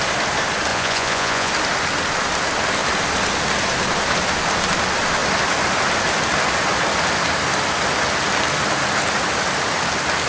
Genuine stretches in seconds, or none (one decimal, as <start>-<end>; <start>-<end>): 0.0-0.7; 1.5-10.3